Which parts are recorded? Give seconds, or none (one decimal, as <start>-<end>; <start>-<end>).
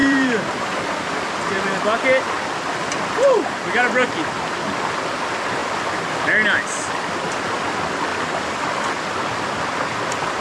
1.2-5.6; 6.2-8.1; 8.9-10.4